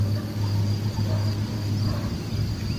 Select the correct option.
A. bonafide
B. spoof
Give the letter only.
A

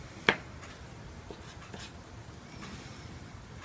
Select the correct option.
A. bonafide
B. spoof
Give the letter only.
A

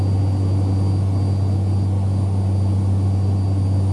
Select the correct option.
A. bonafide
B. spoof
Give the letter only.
A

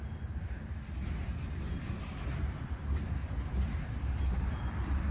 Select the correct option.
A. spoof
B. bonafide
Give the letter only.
B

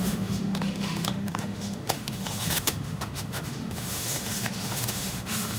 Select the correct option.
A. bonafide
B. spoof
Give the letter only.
B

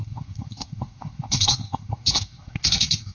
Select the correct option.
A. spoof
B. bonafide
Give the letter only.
A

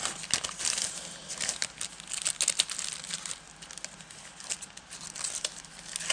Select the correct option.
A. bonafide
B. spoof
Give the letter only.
A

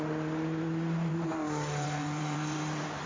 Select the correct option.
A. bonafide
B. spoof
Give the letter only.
B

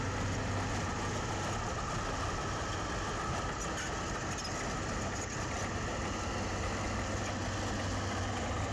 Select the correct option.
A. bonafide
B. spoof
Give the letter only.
A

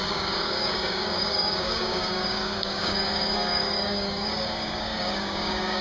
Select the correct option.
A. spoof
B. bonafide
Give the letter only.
A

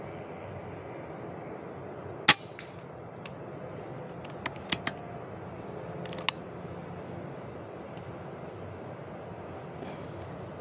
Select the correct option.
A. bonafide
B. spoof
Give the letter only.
A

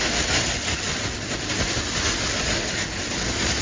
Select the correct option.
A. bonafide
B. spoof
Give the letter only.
A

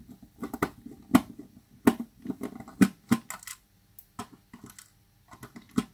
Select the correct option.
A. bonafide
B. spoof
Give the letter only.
A